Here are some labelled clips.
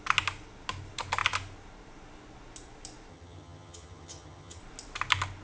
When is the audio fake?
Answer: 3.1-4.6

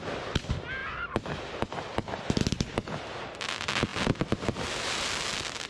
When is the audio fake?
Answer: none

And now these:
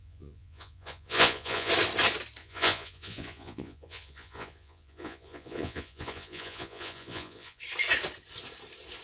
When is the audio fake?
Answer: 0.0-1.7; 2.4-7.6

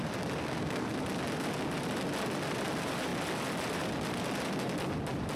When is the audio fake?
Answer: 0.4-0.9

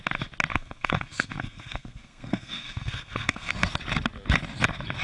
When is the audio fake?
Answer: 0.5-3.5

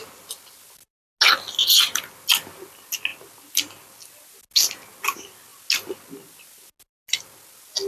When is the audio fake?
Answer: none

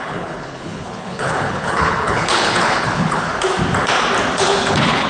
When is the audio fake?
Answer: 0.0-3.3; 4.4-5.1

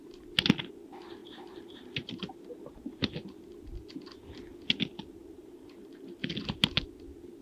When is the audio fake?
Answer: 1.2-2.3; 5.2-6.3